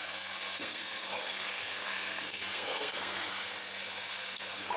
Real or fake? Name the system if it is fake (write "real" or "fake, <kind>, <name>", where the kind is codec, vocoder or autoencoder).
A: fake, codec, SNAC